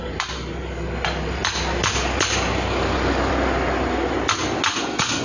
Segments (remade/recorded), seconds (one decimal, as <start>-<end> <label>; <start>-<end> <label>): 0.0-5.2 recorded